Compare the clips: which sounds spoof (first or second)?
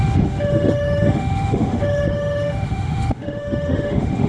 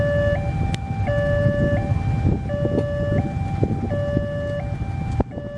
first